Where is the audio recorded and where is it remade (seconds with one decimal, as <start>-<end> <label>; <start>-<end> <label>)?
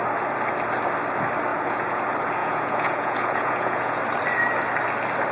0.0-1.5 recorded; 1.5-2.0 remade; 2.0-2.4 recorded; 2.4-4.0 remade; 4.0-5.3 recorded